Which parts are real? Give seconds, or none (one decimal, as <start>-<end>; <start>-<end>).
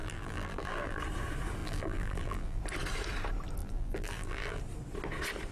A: 1.0-1.6; 2.6-3.6; 4.6-5.5